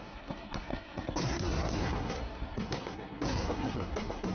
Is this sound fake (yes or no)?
yes